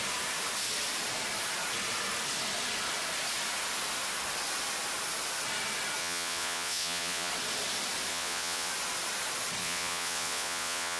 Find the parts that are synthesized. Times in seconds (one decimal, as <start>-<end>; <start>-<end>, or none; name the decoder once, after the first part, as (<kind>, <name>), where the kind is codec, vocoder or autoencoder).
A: 6.0-7.3 (vocoder, Vocos); 8.1-8.7; 9.6-11.0